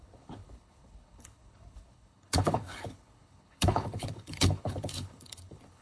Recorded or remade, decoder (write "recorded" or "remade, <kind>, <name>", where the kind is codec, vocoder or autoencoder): remade, codec, HILCodec